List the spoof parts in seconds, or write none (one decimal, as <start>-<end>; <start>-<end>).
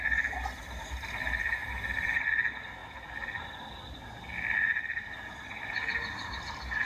none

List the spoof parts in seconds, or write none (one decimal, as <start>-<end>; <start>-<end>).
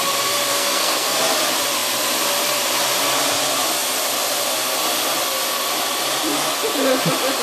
0.5-1.2